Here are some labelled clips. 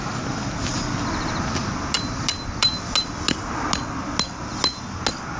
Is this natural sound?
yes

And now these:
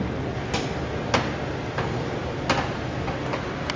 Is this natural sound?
yes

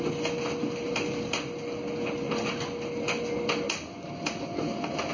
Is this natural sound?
yes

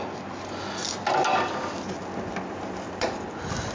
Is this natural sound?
yes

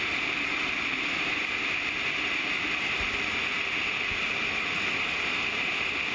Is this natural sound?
yes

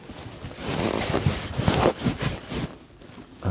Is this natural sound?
yes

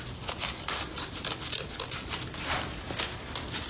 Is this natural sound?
yes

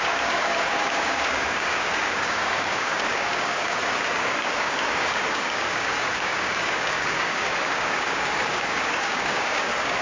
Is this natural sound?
no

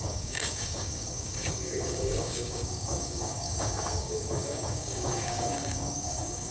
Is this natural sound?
no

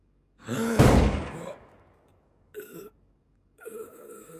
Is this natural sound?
no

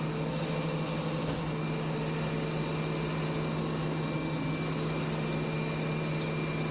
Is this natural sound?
yes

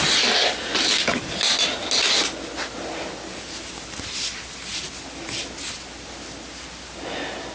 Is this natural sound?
yes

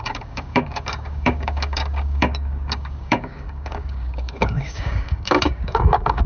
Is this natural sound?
no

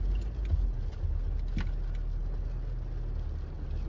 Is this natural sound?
yes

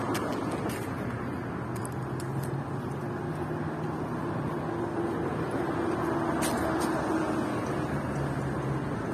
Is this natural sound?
yes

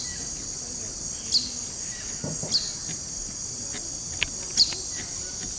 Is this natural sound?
yes